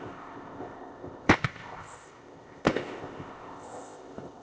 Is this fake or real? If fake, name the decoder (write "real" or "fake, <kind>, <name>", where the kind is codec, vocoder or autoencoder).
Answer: fake, codec, ZipCodec